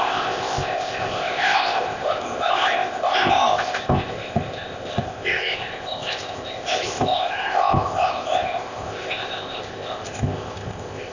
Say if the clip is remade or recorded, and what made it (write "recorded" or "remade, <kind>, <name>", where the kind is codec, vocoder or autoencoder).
remade, codec, ZipCodec